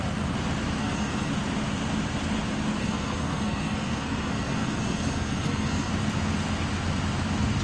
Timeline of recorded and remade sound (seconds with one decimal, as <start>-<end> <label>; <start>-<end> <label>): 0.0-0.8 recorded; 0.8-1.3 remade; 1.3-2.8 recorded; 2.8-5.9 remade; 5.9-7.6 recorded